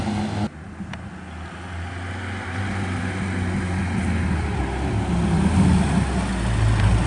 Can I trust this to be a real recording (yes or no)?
yes